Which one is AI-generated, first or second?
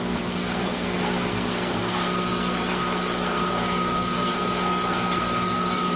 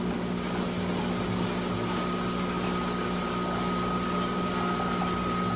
first